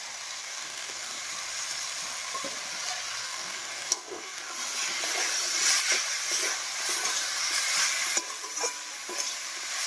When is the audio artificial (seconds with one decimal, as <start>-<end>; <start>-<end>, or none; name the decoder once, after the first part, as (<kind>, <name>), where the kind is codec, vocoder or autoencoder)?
0.4-1.2 (codec, DAC); 3.2-4.4

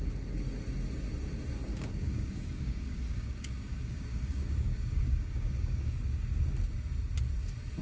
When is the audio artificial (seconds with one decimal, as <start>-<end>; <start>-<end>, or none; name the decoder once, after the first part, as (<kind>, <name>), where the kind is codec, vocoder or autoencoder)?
1.7-6.4 (codec, DAC)